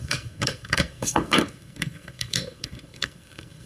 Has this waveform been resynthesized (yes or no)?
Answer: yes